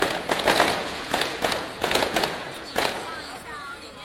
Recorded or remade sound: remade